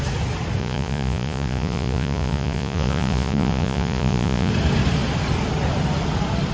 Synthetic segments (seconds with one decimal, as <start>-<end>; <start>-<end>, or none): 0.6-4.5

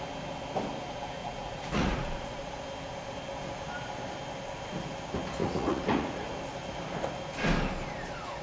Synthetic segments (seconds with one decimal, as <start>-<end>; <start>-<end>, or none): 1.2-2.6; 5.4-6.3

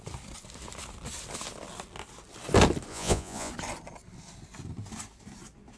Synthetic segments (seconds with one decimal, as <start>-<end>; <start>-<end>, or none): 2.9-3.5

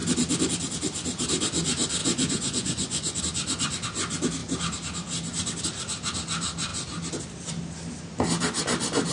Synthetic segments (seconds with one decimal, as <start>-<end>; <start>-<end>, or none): 2.0-3.2

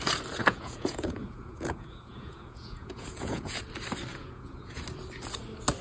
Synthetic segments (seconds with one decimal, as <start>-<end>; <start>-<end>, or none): 0.4-3.6; 4.1-4.8

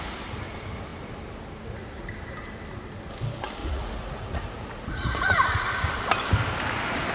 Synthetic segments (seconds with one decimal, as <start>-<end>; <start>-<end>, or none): 3.6-5.9